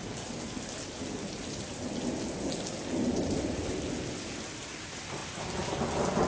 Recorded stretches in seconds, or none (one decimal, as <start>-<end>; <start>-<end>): 0.0-6.3